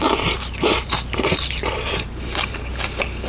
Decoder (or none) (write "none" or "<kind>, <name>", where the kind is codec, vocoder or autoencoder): vocoder, BigVGAN v2